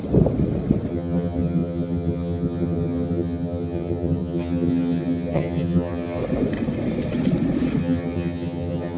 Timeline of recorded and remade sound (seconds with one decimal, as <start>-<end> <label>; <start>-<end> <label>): 0.0-0.9 recorded; 0.9-6.2 remade; 6.2-7.8 recorded; 7.8-9.0 remade